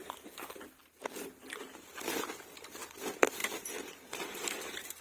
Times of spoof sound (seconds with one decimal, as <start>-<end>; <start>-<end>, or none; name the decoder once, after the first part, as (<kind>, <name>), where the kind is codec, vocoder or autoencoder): 3.4-5.0 (vocoder, BigVGAN v2)